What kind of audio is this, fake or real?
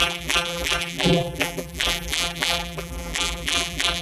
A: fake